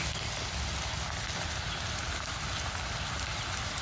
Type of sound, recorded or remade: recorded